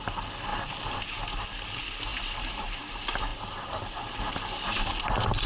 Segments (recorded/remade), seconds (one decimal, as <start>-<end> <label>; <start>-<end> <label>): 0.0-2.1 recorded; 2.1-2.9 remade; 2.9-3.3 recorded; 3.3-3.9 remade; 3.9-5.5 recorded